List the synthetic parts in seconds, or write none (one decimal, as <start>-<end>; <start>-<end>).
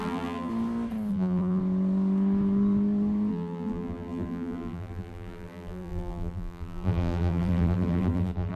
0.0-0.5; 1.1-1.6; 3.3-8.5